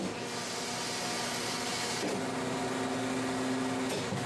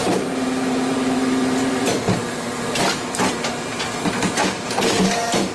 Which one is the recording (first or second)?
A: first